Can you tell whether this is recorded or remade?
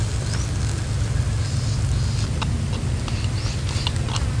recorded